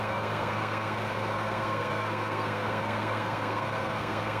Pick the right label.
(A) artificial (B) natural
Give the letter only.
A